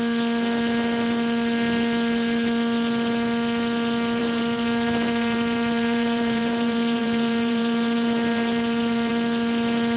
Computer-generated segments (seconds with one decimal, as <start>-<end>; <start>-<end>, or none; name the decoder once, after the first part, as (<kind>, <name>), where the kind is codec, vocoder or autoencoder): 4.2-9.1 (vocoder, BigVGAN v2)